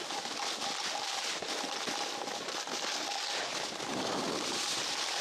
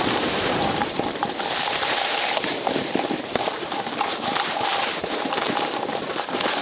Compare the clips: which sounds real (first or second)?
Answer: first